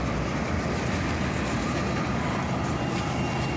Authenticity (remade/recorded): recorded